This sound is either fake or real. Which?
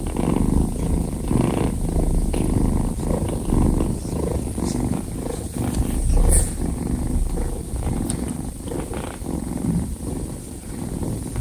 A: real